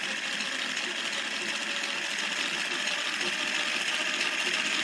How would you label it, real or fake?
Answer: real